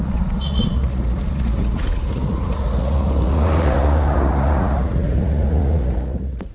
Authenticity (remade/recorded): remade